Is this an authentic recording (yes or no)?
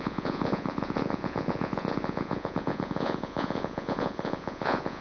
no